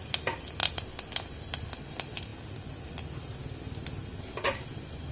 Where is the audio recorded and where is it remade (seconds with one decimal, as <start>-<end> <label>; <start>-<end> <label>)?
0.0-5.1 recorded